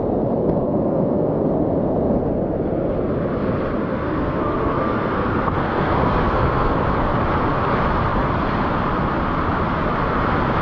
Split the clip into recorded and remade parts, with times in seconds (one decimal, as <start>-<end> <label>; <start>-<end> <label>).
0.0-0.4 recorded; 0.4-1.4 remade; 1.4-3.8 recorded; 3.8-6.8 remade; 6.8-10.6 recorded